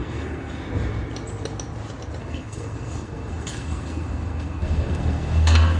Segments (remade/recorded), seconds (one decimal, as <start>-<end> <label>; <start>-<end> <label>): 0.0-0.6 remade; 0.6-2.2 recorded; 2.2-5.8 remade